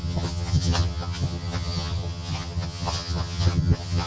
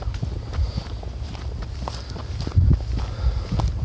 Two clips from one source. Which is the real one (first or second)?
second